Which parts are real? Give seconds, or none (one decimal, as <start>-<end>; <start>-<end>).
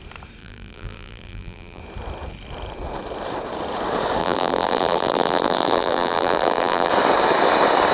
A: 0.0-0.4; 1.8-4.2; 6.9-7.9